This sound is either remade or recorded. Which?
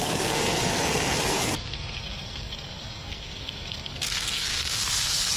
remade